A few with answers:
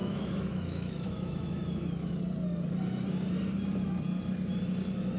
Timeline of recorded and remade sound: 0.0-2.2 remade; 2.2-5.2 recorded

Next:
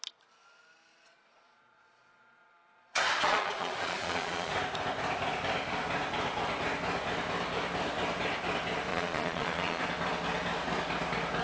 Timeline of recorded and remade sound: 0.0-0.9 recorded; 0.9-4.5 remade; 4.5-8.9 recorded; 8.9-9.8 remade; 9.8-11.4 recorded

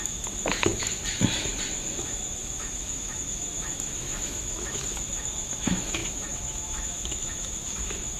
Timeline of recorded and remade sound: 0.0-1.0 remade; 1.0-1.9 recorded; 1.9-8.2 remade

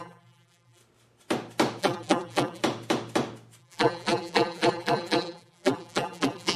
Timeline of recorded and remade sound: 0.0-0.8 remade; 0.8-1.8 recorded; 1.8-2.6 remade; 2.6-3.6 recorded; 3.6-6.6 remade

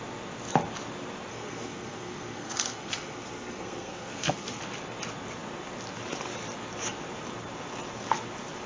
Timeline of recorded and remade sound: 0.0-1.3 recorded; 1.3-4.6 remade; 4.6-8.7 recorded

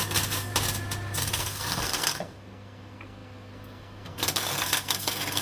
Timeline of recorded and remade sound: 0.0-0.5 remade; 0.5-1.2 recorded; 1.2-5.4 remade

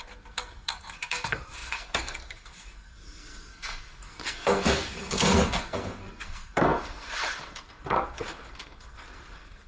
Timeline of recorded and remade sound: 0.0-9.7 remade

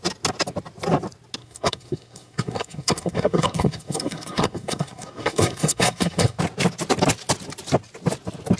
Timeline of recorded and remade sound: 0.0-1.4 recorded; 1.4-6.4 remade; 6.4-8.6 recorded